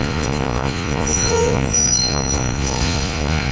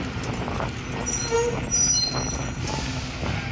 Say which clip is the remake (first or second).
first